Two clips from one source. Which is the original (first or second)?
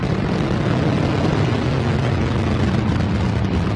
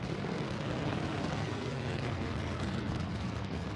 first